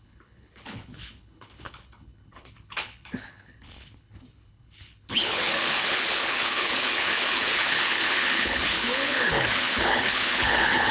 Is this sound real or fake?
fake